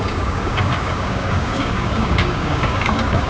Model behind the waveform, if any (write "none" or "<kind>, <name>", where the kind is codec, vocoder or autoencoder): codec, DAC